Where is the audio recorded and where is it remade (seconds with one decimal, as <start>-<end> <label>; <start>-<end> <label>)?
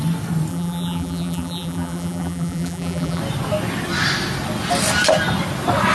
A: 0.0-0.5 recorded; 0.5-3.2 remade; 3.2-5.9 recorded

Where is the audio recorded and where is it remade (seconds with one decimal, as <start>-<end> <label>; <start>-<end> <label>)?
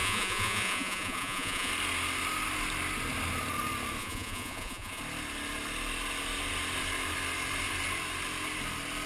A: 0.0-1.7 remade; 1.7-4.0 recorded; 4.0-5.0 remade; 5.0-9.1 recorded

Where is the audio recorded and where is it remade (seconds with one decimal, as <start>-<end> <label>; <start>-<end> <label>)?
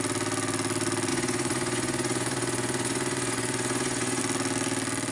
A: 0.0-1.1 recorded; 1.1-4.2 remade; 4.2-5.1 recorded